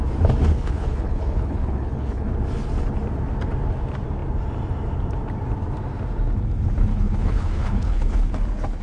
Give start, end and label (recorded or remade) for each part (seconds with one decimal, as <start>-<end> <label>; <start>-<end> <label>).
0.0-0.5 recorded; 0.5-2.3 remade; 2.3-6.9 recorded; 6.9-8.3 remade; 8.3-8.8 recorded